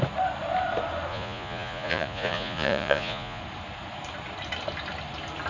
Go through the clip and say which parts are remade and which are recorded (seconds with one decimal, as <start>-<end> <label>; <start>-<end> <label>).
0.0-1.1 recorded; 1.1-3.4 remade; 3.4-5.5 recorded